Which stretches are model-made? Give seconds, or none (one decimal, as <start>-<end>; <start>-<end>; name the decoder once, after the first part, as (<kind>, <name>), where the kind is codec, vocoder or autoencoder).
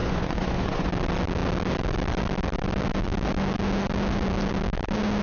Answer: 0.0-0.9 (vocoder, Vocos)